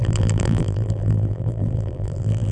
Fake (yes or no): yes